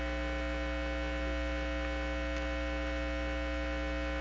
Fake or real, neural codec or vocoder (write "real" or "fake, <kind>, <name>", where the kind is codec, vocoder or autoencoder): real